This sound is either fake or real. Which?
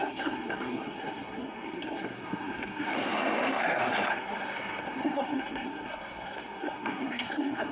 fake